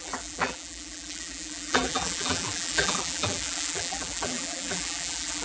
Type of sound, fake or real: fake